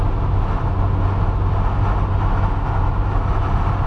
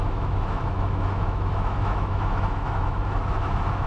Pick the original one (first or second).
first